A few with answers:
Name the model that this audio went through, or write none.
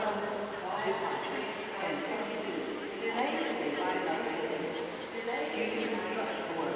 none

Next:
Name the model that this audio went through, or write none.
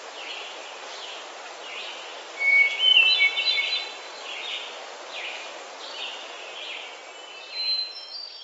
none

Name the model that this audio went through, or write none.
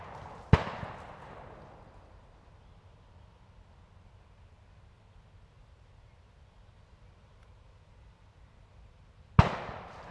none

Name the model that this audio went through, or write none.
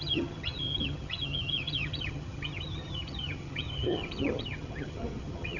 vocoder, HiFi-GAN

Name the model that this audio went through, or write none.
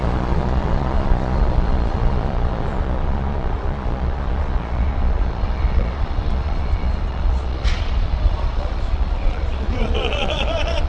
vocoder, Vocos